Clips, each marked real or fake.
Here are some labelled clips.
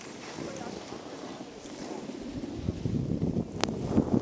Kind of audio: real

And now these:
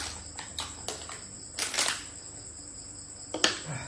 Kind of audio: real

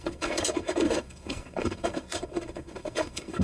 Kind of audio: fake